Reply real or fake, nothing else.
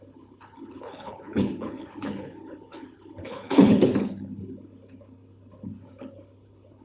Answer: fake